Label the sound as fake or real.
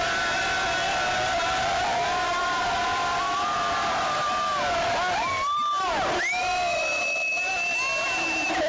real